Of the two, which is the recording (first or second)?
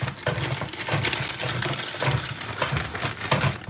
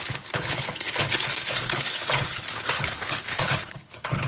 first